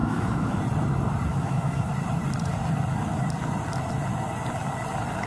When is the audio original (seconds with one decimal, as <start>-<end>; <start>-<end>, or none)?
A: 0.6-1.3; 1.9-5.3